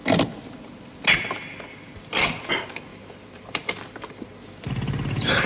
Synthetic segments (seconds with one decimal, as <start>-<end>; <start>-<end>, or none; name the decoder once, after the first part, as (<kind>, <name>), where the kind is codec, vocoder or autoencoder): 2.9-5.5 (vocoder, BigVGAN v2)